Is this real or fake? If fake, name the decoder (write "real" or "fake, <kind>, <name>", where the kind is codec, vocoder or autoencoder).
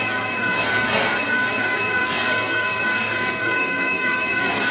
fake, codec, SNAC